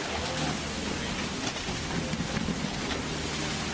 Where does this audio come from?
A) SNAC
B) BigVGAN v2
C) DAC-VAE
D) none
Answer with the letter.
D